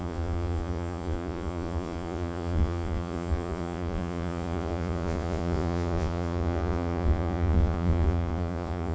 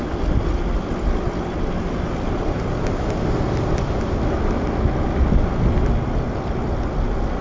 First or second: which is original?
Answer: second